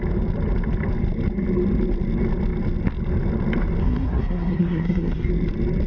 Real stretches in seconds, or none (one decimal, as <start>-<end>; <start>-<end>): 0.0-3.8; 5.3-5.9